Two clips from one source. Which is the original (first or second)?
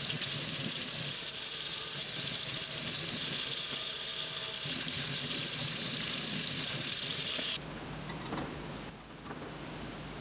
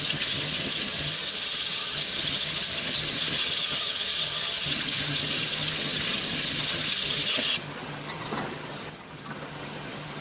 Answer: first